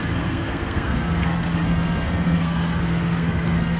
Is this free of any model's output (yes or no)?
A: no